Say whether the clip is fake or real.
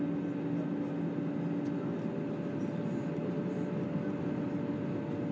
real